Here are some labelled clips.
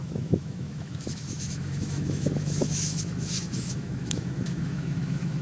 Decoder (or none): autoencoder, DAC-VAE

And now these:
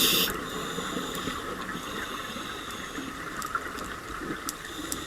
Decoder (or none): none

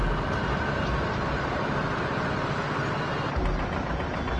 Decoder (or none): none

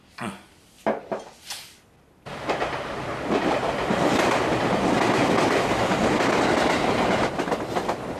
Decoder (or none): none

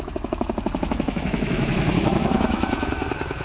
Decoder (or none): autoencoder, DAC-VAE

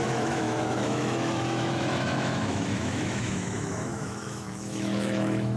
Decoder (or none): autoencoder, DAC-VAE